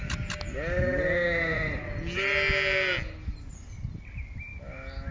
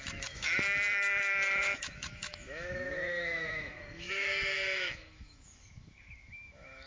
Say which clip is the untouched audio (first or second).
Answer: first